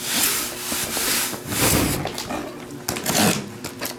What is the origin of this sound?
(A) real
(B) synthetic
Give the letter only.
A